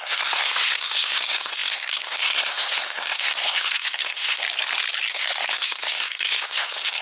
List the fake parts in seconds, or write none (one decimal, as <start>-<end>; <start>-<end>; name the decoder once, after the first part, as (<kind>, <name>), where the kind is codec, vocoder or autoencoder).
0.0-4.4 (codec, SNAC); 5.1-7.0